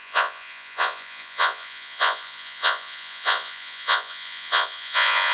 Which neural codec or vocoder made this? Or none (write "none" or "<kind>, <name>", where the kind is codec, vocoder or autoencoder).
vocoder, Vocos